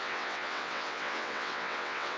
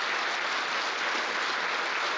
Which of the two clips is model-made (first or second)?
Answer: first